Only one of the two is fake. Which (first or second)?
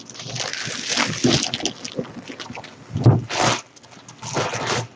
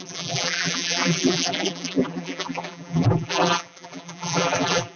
second